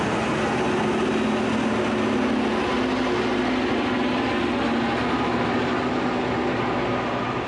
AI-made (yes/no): no